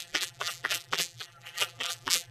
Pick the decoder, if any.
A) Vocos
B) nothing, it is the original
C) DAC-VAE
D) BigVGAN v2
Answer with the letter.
D